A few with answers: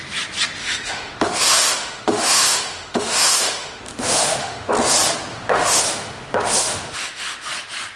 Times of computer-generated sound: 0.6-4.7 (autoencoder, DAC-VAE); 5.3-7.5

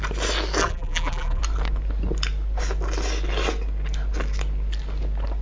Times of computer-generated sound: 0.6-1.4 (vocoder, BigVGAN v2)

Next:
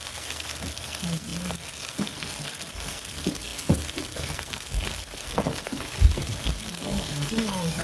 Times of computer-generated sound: 0.0-7.8 (codec, SNAC)